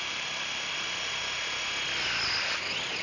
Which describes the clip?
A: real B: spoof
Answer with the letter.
A